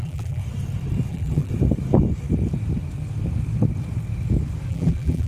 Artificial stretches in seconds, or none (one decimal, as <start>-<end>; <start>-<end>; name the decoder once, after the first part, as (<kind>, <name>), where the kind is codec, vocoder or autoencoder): 0.0-0.4 (vocoder, BigVGAN v2); 1.1-1.5; 4.7-5.3